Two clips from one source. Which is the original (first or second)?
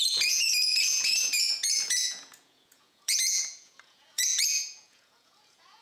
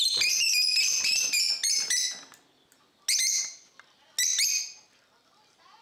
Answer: second